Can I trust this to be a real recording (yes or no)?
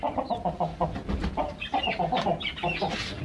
yes